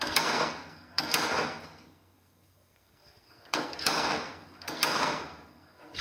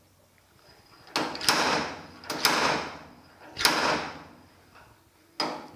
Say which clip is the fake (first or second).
first